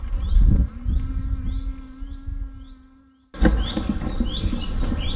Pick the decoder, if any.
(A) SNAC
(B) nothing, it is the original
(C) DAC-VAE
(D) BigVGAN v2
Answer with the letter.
B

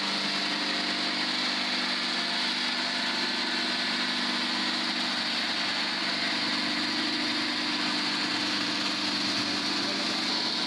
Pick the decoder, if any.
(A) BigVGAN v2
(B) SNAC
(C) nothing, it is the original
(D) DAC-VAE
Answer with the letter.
C